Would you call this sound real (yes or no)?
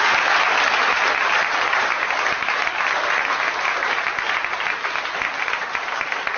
yes